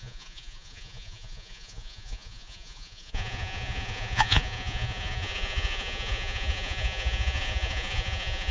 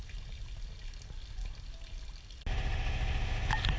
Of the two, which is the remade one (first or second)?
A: first